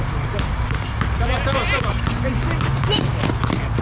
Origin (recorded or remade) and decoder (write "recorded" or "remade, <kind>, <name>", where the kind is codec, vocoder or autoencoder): recorded